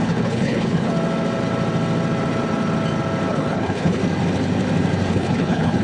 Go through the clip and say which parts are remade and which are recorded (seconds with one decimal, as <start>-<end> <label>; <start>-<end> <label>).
0.0-0.9 remade; 0.9-3.3 recorded; 3.3-4.0 remade; 4.0-5.1 recorded; 5.1-5.8 remade